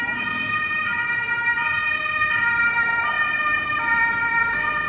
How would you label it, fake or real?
real